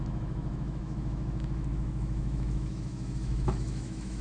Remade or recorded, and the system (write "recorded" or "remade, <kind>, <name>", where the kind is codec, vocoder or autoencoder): remade, autoencoder, DAC-VAE